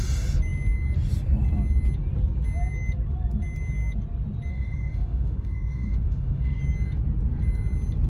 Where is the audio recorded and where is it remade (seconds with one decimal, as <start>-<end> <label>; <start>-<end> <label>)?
0.0-4.5 recorded; 4.5-6.6 remade; 6.6-8.1 recorded